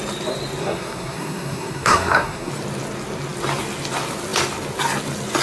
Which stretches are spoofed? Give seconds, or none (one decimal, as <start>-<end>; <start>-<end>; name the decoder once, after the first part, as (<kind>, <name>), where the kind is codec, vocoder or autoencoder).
0.6-2.5 (codec, SNAC)